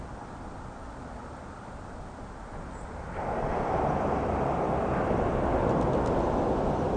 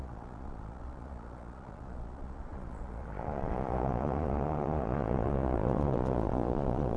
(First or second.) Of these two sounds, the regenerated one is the second